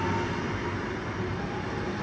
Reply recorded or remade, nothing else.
recorded